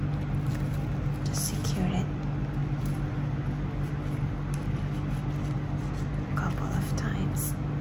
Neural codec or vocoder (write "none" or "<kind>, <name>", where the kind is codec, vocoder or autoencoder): none